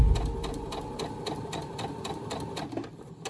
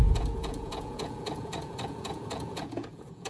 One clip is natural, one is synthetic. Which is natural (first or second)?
first